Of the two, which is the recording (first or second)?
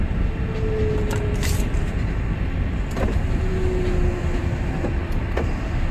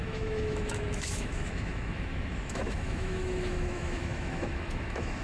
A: first